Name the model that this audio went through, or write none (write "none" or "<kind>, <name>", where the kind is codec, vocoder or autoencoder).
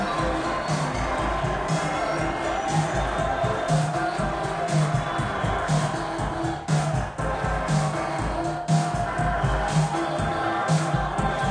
none